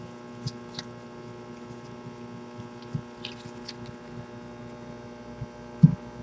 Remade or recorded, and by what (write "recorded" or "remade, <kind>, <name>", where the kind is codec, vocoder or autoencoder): recorded